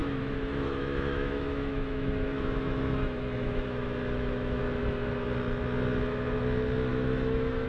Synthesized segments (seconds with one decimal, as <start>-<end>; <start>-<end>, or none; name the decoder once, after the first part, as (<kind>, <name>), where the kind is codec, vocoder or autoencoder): 0.0-4.6 (autoencoder, DAC-VAE); 6.9-7.7